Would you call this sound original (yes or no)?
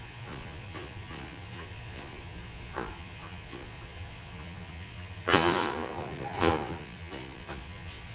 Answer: no